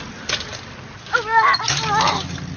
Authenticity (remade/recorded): recorded